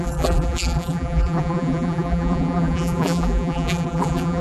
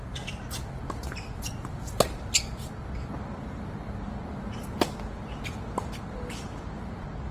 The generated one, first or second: first